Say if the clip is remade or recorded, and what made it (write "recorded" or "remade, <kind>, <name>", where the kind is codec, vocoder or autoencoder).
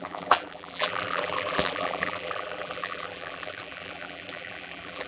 remade, vocoder, BigVGAN v2